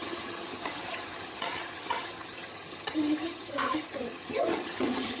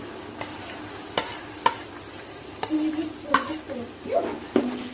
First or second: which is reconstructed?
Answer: first